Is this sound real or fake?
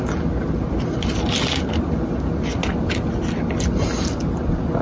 real